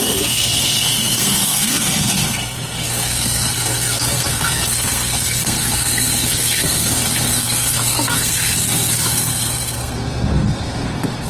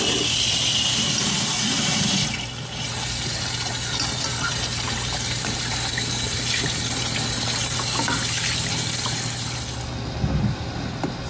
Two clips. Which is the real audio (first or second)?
second